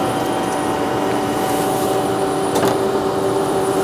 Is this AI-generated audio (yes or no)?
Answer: yes